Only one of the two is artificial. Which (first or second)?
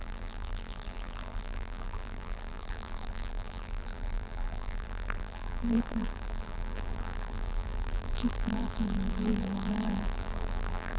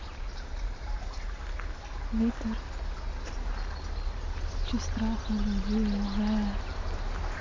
first